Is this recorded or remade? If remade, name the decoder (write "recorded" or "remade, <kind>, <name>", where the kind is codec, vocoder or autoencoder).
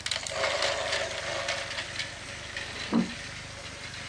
recorded